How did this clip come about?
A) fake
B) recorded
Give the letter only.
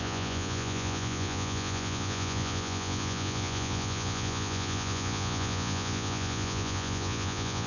A